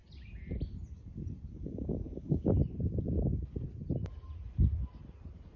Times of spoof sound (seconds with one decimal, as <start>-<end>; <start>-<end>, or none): 1.5-2.6